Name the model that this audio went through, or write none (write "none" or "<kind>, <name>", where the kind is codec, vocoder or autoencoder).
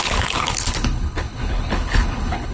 codec, HILCodec